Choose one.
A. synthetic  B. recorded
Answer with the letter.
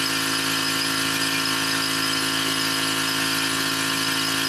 B